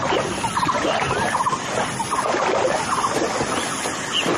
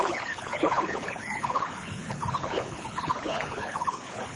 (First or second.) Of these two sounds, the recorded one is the first